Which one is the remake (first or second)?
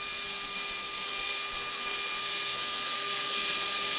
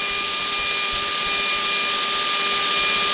first